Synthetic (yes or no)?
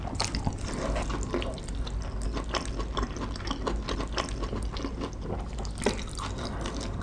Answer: no